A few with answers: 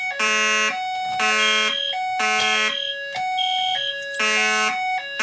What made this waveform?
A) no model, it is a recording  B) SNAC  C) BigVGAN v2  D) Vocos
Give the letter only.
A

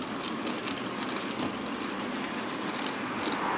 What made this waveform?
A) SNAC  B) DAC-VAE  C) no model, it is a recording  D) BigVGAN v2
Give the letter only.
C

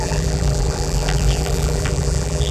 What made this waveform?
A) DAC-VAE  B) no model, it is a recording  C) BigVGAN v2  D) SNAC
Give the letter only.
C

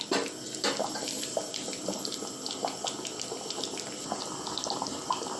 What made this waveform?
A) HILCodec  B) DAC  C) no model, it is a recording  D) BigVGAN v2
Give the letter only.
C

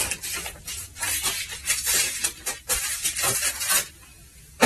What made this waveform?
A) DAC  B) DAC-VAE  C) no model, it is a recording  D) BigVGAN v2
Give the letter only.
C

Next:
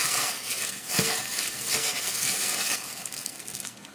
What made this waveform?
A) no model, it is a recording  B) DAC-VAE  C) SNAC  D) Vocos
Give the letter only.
C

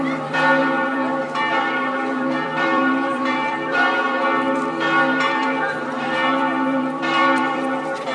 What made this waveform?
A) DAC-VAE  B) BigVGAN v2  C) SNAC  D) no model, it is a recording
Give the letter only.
B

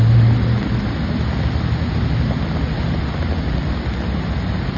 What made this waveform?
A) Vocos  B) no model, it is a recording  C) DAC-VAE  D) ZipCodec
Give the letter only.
B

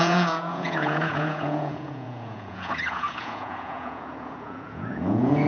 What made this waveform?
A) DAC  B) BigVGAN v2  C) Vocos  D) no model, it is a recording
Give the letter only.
C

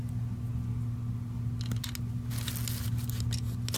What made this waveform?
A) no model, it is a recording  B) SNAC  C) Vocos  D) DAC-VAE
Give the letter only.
A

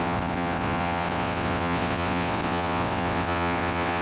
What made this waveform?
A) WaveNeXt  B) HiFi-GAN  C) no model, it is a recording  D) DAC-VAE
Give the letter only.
A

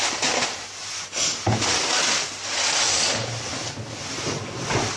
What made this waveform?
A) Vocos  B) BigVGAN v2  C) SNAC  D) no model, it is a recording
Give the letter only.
D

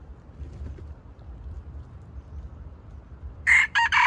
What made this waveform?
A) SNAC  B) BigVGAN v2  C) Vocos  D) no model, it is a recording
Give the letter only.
B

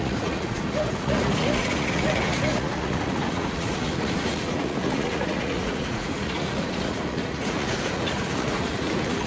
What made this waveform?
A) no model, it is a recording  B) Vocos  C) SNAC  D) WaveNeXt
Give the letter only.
B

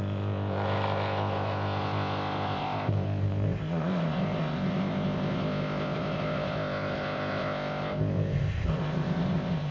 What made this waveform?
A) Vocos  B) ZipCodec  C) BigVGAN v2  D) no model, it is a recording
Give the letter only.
B